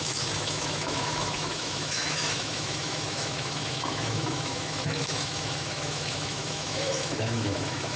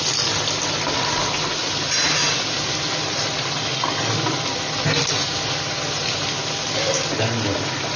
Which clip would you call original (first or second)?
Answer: second